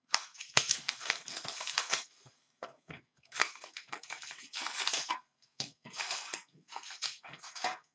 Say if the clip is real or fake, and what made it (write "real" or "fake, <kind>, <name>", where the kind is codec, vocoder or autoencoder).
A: fake, codec, SNAC